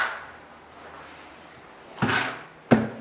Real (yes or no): yes